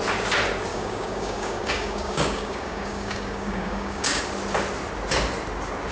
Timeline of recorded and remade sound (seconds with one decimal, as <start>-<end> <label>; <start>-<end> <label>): 0.0-0.7 recorded; 0.7-4.2 remade; 4.2-5.9 recorded